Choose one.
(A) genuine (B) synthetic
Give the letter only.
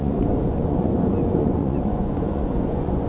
B